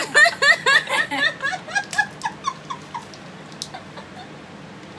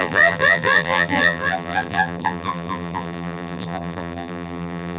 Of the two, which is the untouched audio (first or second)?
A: first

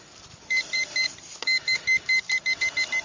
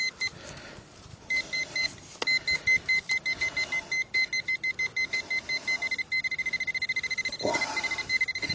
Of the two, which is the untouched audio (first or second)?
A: second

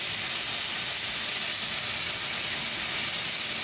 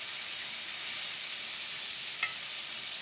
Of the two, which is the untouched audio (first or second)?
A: first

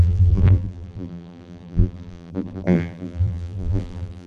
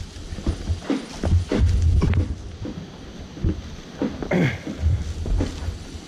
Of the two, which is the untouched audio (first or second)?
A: second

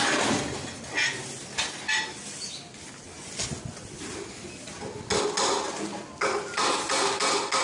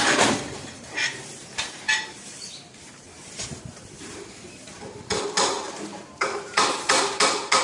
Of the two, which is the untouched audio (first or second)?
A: first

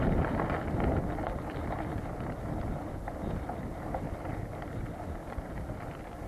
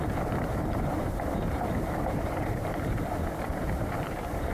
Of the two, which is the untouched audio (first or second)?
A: first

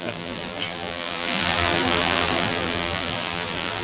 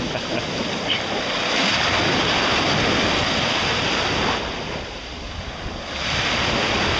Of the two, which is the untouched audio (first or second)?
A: second